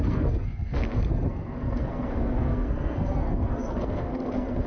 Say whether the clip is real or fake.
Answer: fake